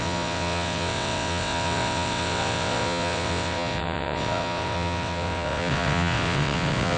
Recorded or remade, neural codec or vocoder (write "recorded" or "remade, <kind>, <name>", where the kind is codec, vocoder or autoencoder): remade, vocoder, WaveNeXt